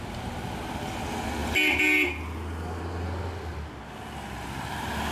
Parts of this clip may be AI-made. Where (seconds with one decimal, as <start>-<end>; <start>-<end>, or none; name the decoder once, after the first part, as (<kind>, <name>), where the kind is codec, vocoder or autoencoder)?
none